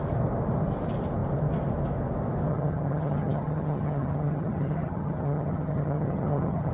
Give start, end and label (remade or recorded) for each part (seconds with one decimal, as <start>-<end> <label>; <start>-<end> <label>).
0.0-2.5 recorded; 2.5-6.7 remade